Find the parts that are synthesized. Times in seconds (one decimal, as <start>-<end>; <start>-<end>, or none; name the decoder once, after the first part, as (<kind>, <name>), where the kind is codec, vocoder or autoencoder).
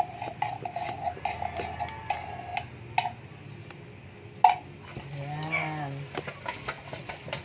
none